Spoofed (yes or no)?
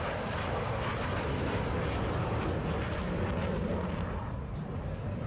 no